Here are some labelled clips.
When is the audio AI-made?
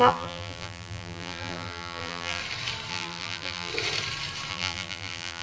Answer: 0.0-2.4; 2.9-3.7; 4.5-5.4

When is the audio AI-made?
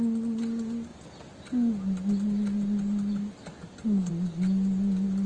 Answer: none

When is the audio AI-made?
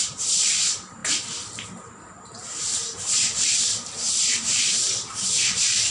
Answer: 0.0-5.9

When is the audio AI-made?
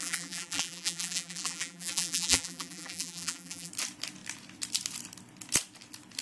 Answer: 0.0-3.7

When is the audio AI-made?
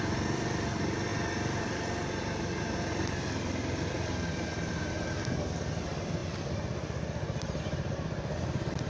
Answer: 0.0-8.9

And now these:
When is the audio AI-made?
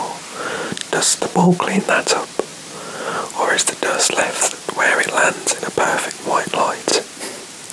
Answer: 0.8-1.6; 2.5-5.7; 6.9-7.7